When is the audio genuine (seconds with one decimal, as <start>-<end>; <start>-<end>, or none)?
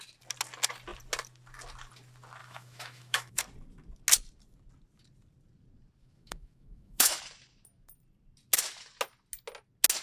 0.0-2.4; 3.4-6.0; 7.2-10.0